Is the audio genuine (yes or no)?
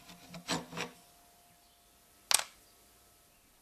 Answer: yes